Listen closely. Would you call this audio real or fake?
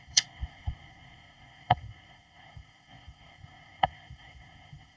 fake